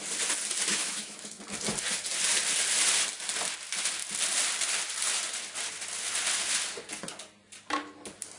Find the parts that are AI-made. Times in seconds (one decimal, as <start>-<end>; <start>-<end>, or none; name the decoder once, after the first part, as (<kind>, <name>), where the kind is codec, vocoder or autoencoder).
0.7-1.4 (autoencoder, DAC-VAE)